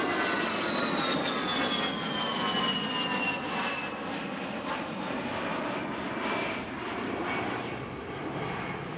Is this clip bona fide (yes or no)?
yes